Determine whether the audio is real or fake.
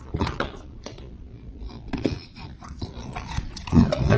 fake